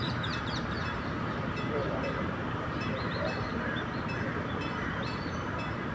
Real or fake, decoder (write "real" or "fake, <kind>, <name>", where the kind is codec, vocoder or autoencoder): fake, vocoder, BigVGAN v2